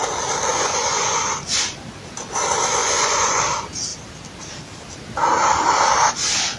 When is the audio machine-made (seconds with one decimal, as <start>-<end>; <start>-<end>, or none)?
0.5-1.2; 2.8-3.4